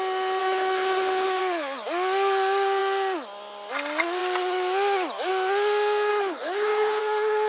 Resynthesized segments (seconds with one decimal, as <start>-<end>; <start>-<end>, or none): 0.4-1.4; 6.1-7.0